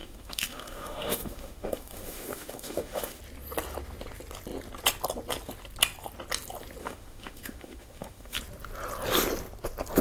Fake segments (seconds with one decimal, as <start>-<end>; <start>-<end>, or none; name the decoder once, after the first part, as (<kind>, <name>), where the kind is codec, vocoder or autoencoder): 0.0-3.2 (autoencoder, DAC-VAE); 6.8-8.4